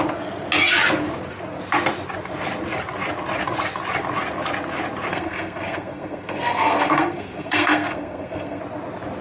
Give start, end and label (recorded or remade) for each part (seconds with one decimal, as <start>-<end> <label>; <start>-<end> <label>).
0.0-5.1 recorded; 5.1-8.6 remade; 8.6-9.2 recorded